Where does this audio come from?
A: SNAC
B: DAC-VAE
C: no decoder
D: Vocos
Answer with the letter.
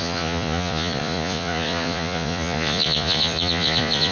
D